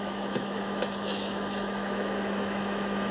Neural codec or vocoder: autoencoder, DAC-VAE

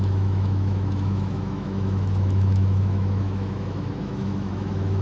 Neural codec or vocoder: autoencoder, DAC-VAE